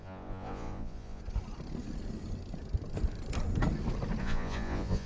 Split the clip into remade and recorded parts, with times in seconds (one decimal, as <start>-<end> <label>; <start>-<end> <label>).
0.0-1.2 remade; 1.2-4.2 recorded; 4.2-5.1 remade